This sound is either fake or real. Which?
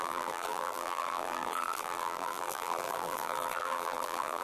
fake